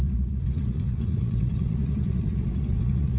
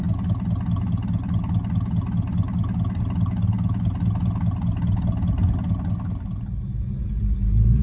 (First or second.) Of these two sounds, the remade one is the first